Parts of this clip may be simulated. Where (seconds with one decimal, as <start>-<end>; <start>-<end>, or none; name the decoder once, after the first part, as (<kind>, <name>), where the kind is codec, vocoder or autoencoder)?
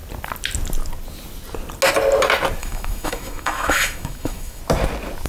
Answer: 2.6-4.6 (autoencoder, DAC-VAE)